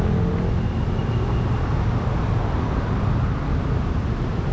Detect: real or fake real